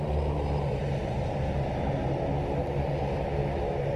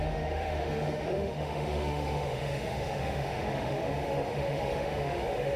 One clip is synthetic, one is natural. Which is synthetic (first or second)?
second